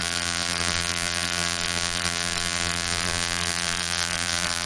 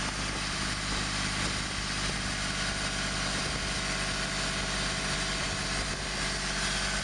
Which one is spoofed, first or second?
first